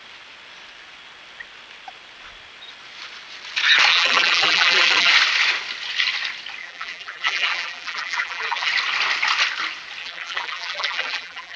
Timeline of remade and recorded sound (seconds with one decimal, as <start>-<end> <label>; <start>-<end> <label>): 0.0-3.9 recorded; 3.9-5.1 remade; 5.1-6.6 recorded; 6.6-8.7 remade; 8.7-10.0 recorded; 10.0-11.6 remade